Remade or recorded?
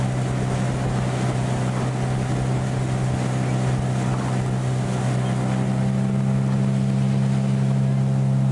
recorded